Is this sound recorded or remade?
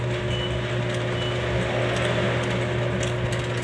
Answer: recorded